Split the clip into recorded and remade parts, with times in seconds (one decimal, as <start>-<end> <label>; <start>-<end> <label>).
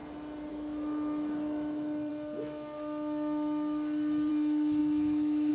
0.0-0.5 recorded; 0.5-2.1 remade; 2.1-4.3 recorded; 4.3-5.5 remade